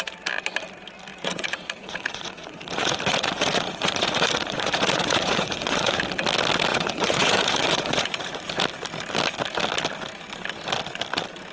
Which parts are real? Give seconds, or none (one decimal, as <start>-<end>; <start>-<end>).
0.0-1.1; 6.0-6.7; 8.5-11.5